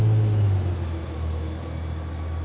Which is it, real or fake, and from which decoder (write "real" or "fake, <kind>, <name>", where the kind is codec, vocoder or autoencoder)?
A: real